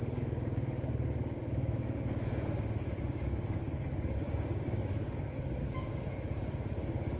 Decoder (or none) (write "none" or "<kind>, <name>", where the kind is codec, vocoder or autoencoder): codec, DAC